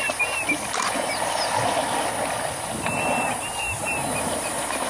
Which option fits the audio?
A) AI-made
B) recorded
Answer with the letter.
B